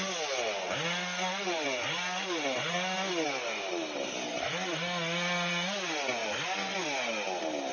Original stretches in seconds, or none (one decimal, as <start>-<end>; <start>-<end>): 0.0-7.7